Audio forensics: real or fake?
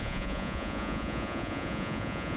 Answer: fake